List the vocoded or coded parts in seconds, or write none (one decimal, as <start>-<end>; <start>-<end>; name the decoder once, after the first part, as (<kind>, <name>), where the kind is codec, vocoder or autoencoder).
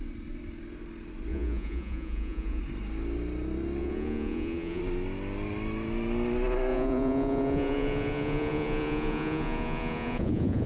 1.3-2.6 (vocoder, Vocos); 3.8-4.8; 6.7-10.7